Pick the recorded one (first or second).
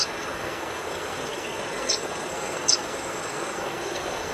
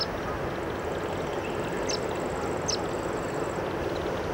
second